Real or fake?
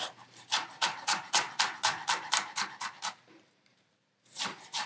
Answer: fake